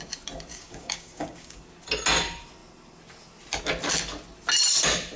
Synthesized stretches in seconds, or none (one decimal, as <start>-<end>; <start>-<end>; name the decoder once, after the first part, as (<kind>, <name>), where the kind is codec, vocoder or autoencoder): 0.5-1.6 (codec, DAC)